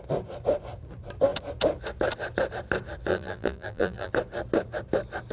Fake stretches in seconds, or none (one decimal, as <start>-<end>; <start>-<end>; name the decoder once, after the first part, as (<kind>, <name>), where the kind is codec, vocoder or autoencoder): 3.1-4.1 (vocoder, BigVGAN v2)